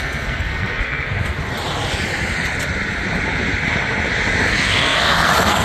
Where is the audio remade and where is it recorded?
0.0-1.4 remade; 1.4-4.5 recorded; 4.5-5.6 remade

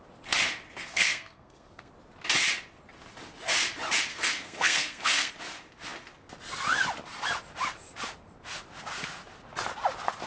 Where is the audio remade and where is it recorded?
0.0-0.9 recorded; 0.9-1.9 remade; 1.9-4.1 recorded; 4.1-5.3 remade; 5.3-10.3 recorded

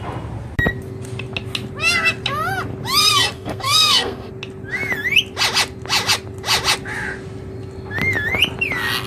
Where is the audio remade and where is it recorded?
0.0-3.0 recorded; 3.0-4.3 remade; 4.3-9.1 recorded